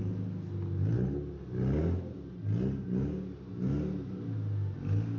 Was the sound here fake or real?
real